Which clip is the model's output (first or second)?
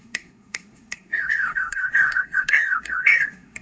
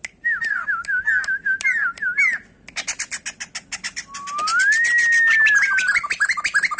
first